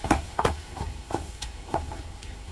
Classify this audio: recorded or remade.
remade